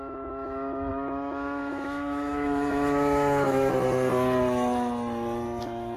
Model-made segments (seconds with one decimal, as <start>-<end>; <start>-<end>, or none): 0.0-3.7; 5.6-6.0